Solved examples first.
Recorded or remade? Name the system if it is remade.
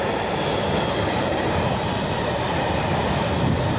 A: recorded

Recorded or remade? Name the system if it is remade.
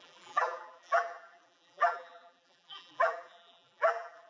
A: remade, vocoder, BigVGAN v2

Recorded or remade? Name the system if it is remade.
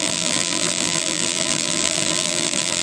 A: remade, vocoder, BigVGAN v2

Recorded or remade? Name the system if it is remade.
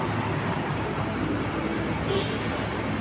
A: recorded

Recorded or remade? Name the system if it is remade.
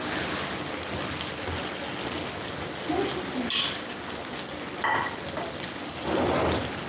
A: recorded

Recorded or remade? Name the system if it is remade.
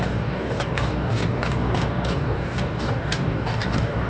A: remade, codec, DAC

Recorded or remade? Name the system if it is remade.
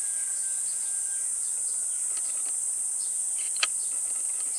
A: recorded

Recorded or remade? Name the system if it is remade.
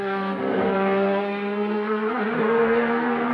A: remade, codec, SNAC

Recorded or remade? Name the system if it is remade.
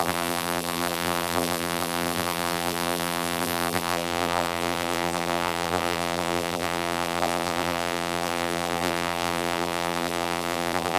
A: remade, vocoder, BigVGAN v2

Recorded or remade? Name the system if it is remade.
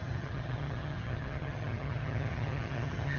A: remade, vocoder, HiFi-GAN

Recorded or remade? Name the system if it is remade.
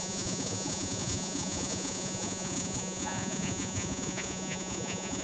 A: remade, vocoder, Vocos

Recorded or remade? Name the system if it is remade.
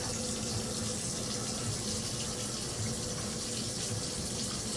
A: recorded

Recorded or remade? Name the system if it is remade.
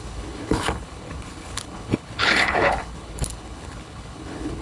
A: remade, codec, HILCodec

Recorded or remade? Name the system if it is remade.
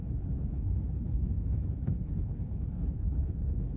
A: remade, codec, HILCodec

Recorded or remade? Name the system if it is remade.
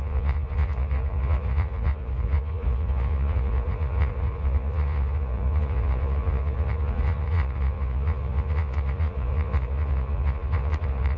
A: remade, vocoder, Vocos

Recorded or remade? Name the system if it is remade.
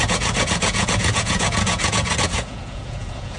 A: remade, vocoder, Vocos